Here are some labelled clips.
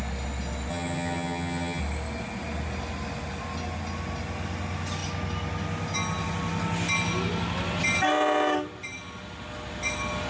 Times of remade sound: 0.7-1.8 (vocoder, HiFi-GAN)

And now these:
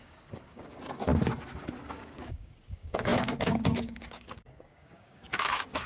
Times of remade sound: 0.0-1.1 (codec, DAC); 1.9-5.9

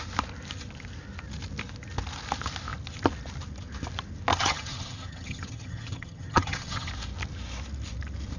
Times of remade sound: 4.3-6.9 (vocoder, HiFi-GAN)

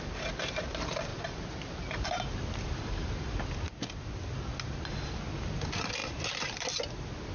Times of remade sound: 1.1-2.9 (vocoder, BigVGAN v2)

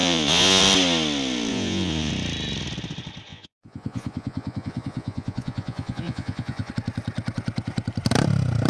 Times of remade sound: 0.0-0.6 (vocoder, Vocos); 1.5-2.1; 3.3-6.7

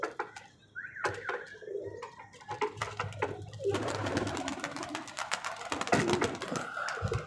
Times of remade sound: none

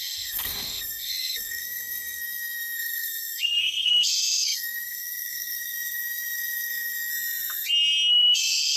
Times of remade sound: 0.0-7.1 (codec, SNAC); 8.1-8.8